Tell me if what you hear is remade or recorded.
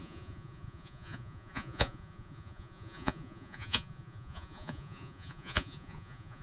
remade